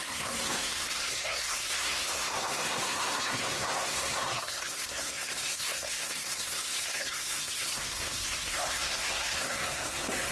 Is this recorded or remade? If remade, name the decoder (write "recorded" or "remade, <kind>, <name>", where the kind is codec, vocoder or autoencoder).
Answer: remade, codec, SNAC